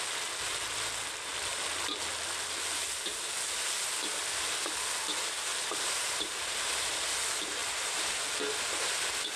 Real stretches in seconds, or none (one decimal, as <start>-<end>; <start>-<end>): 0.0-5.5; 6.7-9.4